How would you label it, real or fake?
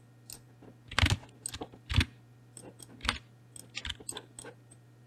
real